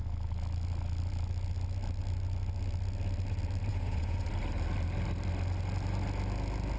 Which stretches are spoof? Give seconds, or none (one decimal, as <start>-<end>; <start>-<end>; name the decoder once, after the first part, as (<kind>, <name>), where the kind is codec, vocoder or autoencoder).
3.7-4.3 (vocoder, Vocos)

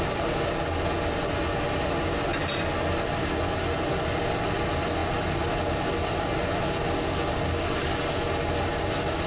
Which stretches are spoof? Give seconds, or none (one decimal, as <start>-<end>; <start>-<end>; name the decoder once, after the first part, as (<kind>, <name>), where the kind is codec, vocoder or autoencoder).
none